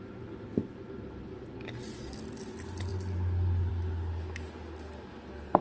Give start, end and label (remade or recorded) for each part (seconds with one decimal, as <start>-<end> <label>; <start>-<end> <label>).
0.0-5.6 recorded